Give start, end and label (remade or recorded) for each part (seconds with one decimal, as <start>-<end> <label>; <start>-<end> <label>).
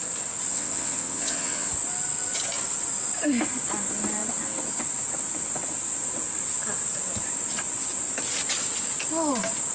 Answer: 0.0-0.5 recorded; 0.5-1.7 remade; 1.7-9.7 recorded